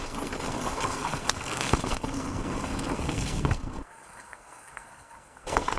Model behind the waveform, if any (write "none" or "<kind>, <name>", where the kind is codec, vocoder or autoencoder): codec, SNAC